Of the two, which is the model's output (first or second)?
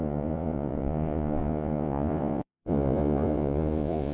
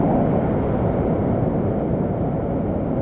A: first